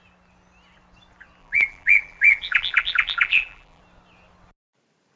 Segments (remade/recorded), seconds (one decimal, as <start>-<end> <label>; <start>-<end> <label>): 0.0-1.4 recorded; 1.4-3.8 remade; 3.8-5.2 recorded